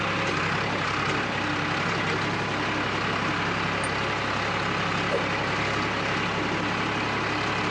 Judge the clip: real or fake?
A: real